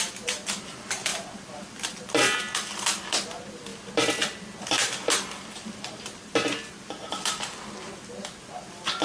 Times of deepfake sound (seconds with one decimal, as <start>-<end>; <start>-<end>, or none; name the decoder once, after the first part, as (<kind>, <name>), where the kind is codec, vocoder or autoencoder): none